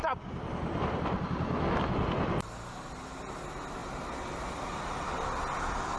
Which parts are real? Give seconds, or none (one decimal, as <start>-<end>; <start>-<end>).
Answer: 0.0-6.0